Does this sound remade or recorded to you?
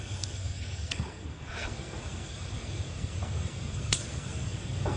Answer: remade